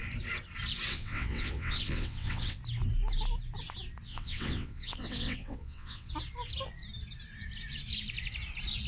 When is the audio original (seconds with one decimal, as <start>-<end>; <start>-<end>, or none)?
0.0-0.9; 2.6-4.1; 6.1-8.9